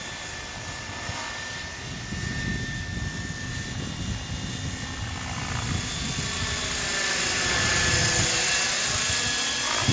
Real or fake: real